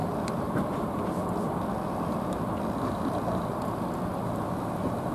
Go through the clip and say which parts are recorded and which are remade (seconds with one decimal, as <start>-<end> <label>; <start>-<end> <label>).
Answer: 0.0-5.1 recorded